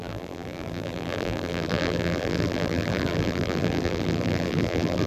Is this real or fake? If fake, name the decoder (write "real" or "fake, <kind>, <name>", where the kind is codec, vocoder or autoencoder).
fake, vocoder, BigVGAN v2